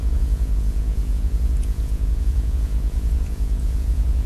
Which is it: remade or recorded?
remade